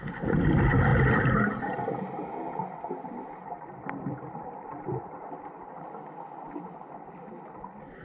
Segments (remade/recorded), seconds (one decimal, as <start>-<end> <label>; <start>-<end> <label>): 0.0-8.0 recorded